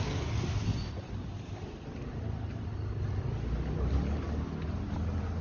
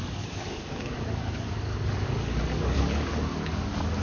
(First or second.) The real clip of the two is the first